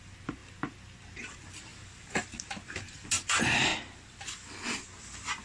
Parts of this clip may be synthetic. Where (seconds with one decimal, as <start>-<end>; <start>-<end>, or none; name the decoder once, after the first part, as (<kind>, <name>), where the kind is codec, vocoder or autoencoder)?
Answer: 0.0-1.7 (vocoder, BigVGAN v2); 2.7-3.7; 5.0-5.4